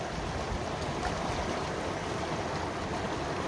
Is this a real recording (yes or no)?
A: yes